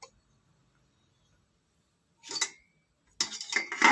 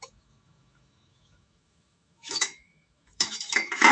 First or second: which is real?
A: first